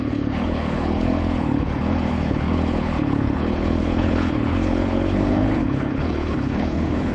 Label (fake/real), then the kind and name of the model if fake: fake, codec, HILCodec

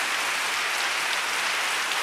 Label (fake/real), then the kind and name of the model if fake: real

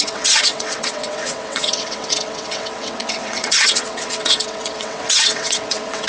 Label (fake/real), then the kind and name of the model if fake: fake, vocoder, WaveNeXt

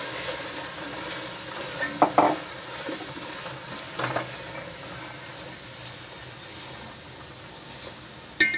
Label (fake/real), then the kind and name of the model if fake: real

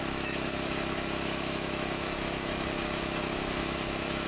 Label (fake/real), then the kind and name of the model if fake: fake, autoencoder, DAC-VAE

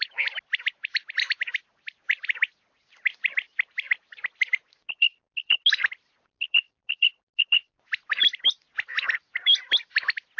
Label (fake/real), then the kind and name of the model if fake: real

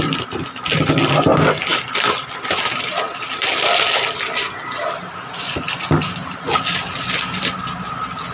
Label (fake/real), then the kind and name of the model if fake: real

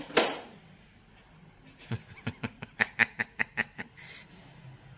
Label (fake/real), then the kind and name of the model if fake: real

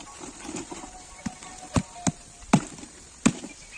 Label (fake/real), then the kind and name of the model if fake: real